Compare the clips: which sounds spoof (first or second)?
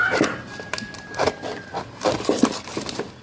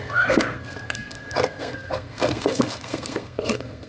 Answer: second